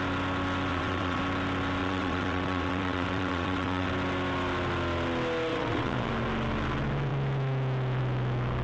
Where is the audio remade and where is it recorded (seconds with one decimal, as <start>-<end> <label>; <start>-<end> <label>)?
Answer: 0.0-0.7 recorded; 0.7-1.2 remade; 1.2-1.8 recorded; 1.8-3.9 remade; 3.9-5.5 recorded; 5.5-6.1 remade; 6.1-8.6 recorded